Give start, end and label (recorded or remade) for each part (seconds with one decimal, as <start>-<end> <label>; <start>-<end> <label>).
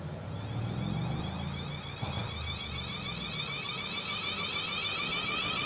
0.0-5.7 recorded